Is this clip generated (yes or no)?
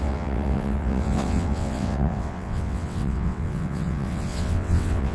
yes